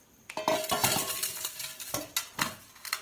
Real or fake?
fake